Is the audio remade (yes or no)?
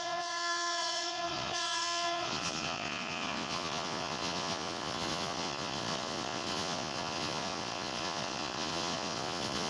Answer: yes